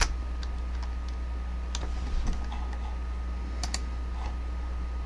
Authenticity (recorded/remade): recorded